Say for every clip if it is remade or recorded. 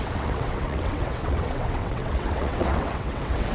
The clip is remade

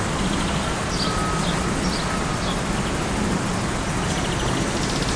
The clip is recorded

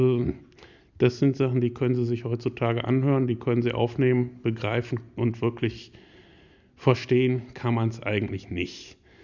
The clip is recorded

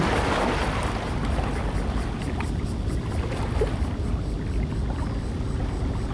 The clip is recorded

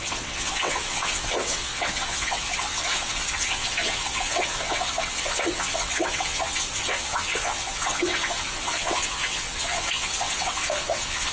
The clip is remade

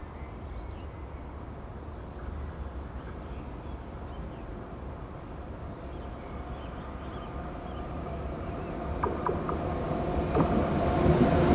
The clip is recorded